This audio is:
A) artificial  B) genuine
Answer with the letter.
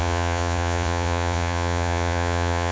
A